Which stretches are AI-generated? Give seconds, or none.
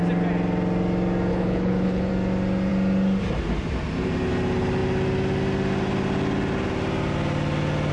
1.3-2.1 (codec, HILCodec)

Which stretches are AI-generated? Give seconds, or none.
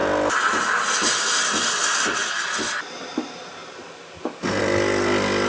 none